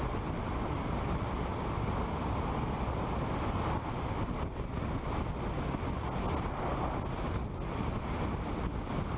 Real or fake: real